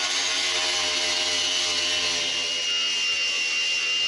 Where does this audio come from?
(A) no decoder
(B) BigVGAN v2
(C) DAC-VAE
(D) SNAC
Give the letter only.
A